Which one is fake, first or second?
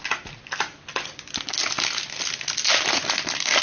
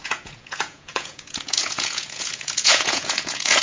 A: second